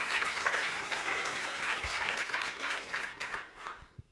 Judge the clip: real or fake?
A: fake